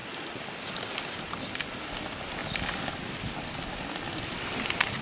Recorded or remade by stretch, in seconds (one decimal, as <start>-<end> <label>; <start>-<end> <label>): 0.0-2.4 recorded; 2.4-3.7 remade; 3.7-5.0 recorded